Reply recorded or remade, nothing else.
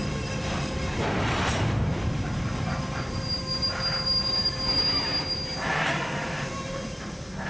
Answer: remade